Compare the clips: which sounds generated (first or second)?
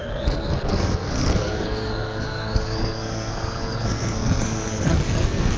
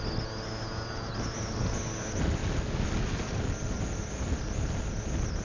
first